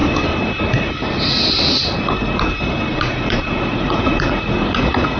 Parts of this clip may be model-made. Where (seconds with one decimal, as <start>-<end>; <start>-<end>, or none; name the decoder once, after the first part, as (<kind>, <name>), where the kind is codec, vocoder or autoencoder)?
2.9-5.2 (vocoder, Vocos)